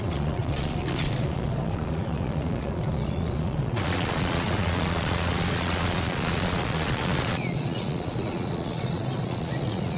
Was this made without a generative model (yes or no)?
no